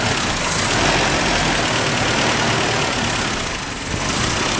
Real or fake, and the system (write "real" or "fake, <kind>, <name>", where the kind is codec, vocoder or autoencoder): real